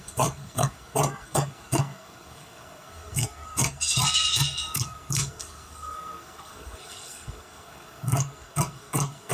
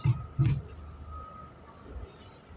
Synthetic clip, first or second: first